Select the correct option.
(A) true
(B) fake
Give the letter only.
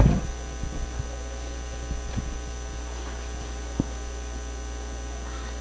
A